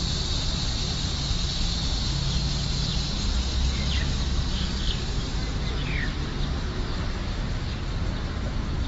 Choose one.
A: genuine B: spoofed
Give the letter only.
A